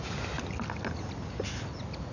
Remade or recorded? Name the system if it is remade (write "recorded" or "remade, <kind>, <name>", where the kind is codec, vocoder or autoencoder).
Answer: recorded